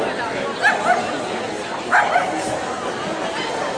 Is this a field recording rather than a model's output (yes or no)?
yes